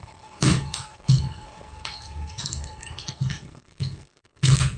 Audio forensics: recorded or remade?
remade